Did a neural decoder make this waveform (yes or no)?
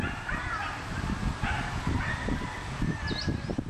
no